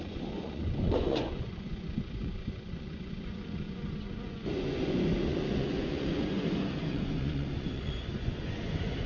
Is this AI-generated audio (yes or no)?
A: yes